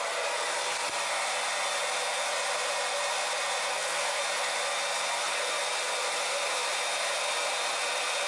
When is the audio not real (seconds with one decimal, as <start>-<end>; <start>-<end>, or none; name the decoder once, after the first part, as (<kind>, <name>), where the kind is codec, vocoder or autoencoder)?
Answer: 3.7-4.2 (codec, SNAC)